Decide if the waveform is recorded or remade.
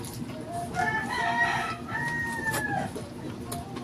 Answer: recorded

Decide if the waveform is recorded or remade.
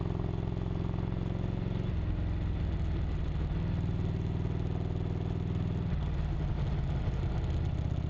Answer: recorded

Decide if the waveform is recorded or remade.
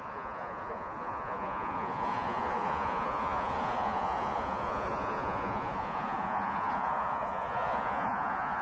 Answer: remade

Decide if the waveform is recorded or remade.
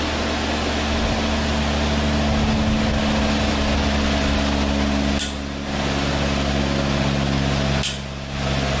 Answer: recorded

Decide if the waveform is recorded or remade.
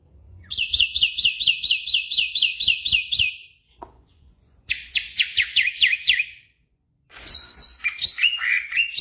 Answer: remade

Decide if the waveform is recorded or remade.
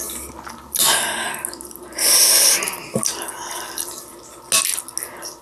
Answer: recorded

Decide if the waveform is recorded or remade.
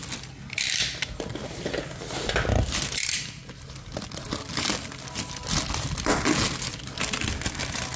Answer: recorded